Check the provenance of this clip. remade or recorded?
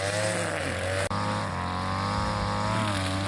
recorded